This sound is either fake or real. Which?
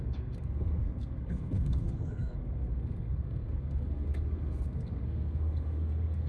fake